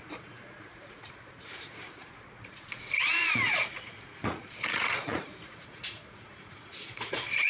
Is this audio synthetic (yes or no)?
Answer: yes